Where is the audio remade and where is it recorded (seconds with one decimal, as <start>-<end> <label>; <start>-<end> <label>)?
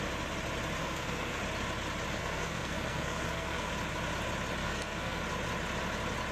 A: 0.0-0.8 recorded; 0.8-1.4 remade; 1.4-2.2 recorded; 2.2-3.7 remade; 3.7-4.6 recorded; 4.6-5.2 remade; 5.2-6.3 recorded